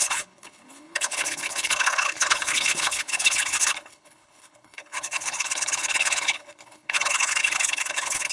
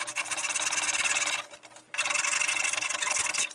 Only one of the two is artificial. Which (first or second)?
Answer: first